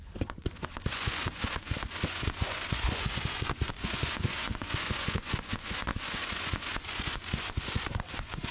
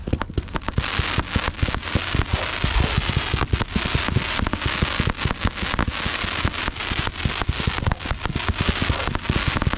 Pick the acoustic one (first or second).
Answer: second